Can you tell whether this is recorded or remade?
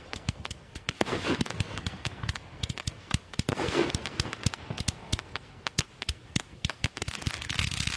remade